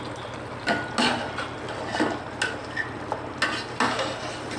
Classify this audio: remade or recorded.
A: recorded